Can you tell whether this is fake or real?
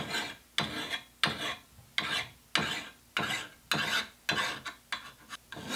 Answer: real